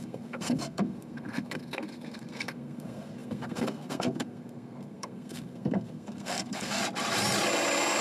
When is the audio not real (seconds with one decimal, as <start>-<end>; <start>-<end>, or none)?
0.0-6.8

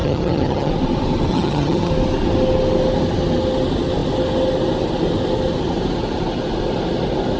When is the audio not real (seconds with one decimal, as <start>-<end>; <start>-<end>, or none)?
0.0-0.7; 1.3-1.9

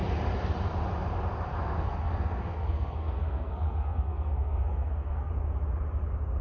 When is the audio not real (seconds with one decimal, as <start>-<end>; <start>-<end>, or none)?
1.5-5.3